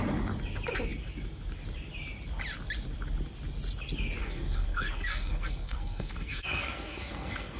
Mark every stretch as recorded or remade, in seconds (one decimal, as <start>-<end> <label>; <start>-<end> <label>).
0.0-4.2 recorded; 4.2-7.6 remade